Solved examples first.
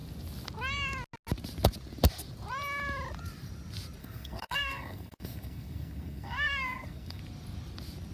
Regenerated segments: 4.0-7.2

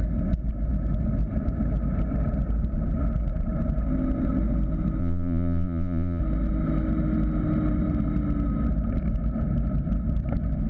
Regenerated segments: 5.0-6.2

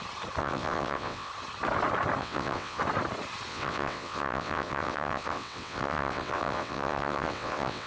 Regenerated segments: 0.4-1.3; 2.2-2.8; 3.5-7.9

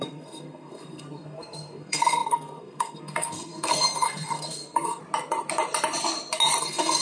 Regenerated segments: 0.0-5.0; 6.6-7.0